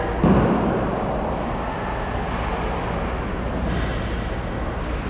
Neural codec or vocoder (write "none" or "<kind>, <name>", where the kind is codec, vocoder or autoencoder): none